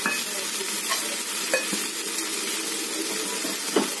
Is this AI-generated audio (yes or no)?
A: no